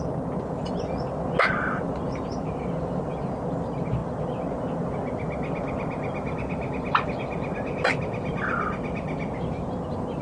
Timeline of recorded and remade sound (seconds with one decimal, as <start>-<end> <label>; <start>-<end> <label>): 0.0-10.2 recorded